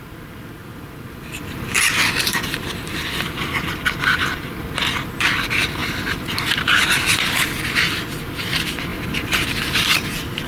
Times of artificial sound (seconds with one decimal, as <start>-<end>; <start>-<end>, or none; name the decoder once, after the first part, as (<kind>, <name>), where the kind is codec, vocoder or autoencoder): 0.6-3.2 (vocoder, BigVGAN v2); 8.9-9.9